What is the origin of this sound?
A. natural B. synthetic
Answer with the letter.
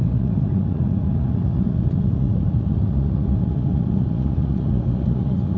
B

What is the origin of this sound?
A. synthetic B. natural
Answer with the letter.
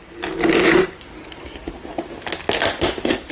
B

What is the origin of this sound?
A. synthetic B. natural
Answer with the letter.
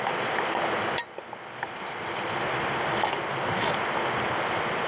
B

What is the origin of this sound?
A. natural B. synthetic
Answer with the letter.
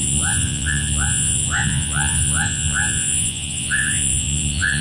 B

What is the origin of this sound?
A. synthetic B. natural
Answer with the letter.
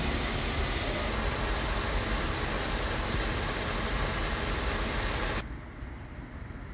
B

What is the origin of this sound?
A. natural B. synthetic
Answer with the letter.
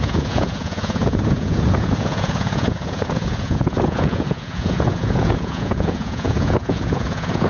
B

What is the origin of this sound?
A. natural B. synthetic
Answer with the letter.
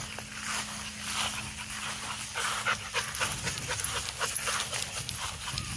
A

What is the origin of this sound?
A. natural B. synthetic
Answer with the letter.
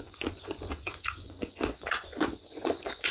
B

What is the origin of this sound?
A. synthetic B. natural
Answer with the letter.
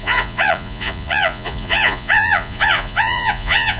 A